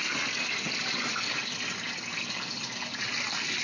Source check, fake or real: real